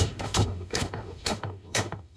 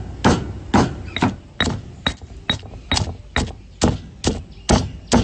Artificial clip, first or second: first